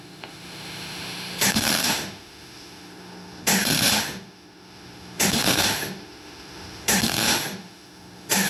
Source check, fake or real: fake